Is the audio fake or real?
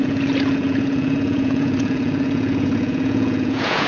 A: fake